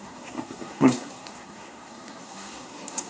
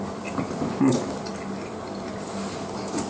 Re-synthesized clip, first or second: first